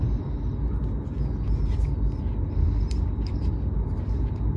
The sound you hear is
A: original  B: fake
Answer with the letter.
A